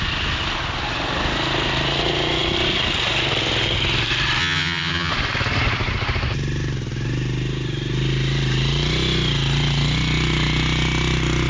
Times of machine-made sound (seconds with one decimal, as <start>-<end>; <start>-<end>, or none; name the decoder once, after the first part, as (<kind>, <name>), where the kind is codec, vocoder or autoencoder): 4.4-5.1 (vocoder, HiFi-GAN)